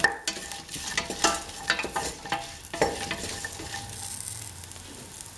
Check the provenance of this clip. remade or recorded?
recorded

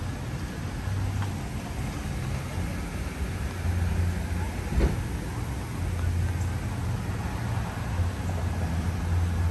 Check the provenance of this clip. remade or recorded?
recorded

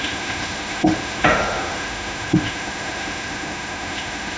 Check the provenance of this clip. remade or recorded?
remade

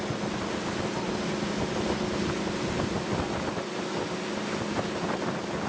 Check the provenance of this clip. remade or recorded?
recorded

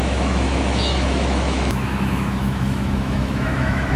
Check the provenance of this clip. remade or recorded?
remade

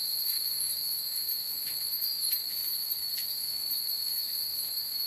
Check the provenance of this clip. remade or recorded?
remade